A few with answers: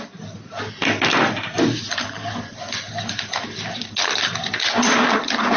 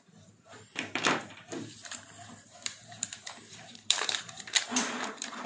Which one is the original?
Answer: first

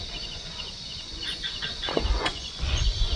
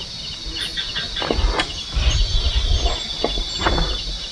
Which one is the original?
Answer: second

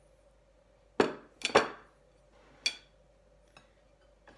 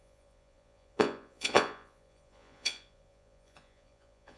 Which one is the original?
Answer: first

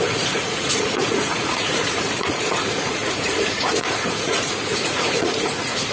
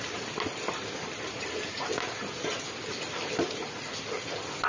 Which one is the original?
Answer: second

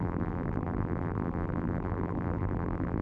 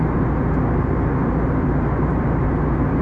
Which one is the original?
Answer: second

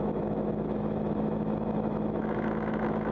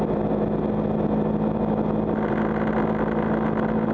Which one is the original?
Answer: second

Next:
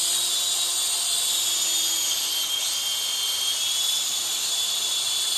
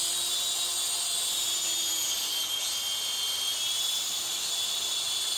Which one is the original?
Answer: second